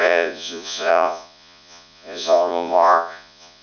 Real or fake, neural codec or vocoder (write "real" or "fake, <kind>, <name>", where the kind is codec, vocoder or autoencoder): fake, vocoder, Vocos